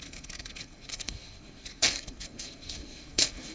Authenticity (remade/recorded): remade